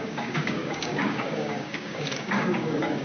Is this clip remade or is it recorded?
remade